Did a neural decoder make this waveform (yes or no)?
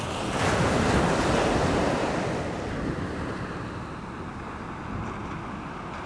no